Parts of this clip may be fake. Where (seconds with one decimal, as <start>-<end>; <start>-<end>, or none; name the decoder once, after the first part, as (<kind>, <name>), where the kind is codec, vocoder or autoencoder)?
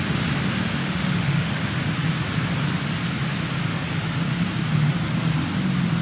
0.8-1.6 (autoencoder, DAC-VAE)